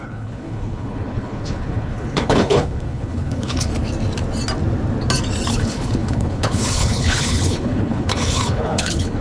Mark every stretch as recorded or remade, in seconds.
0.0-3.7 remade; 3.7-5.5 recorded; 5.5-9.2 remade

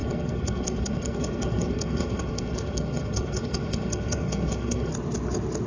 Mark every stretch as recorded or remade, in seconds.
0.0-4.9 remade; 4.9-5.7 recorded